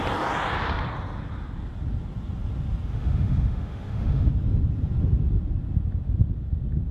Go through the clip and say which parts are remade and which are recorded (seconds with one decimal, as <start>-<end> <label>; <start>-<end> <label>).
0.0-2.9 recorded; 2.9-4.3 remade; 4.3-6.9 recorded